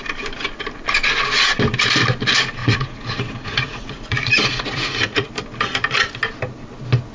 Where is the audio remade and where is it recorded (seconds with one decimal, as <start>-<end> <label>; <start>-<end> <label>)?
0.0-2.6 recorded; 2.6-5.3 remade; 5.3-7.1 recorded